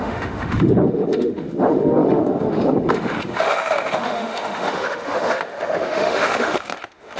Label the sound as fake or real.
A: fake